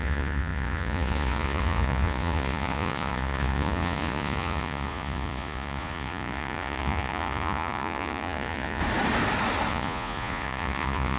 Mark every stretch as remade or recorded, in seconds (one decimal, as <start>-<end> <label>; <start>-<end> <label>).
0.0-8.8 remade; 8.8-9.7 recorded; 9.7-11.2 remade